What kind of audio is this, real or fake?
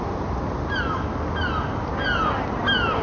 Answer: real